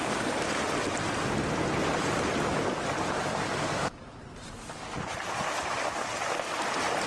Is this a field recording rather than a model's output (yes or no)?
yes